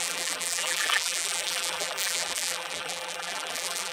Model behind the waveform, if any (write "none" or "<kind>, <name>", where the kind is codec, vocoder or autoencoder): vocoder, BigVGAN v2